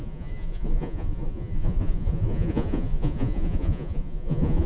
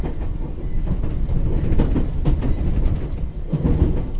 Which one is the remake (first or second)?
first